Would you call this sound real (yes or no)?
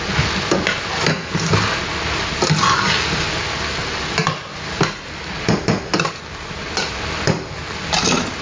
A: yes